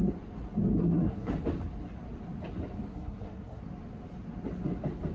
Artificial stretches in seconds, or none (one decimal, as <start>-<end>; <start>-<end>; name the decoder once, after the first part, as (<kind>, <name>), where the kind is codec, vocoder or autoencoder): 0.8-1.3 (codec, SNAC); 2.9-3.6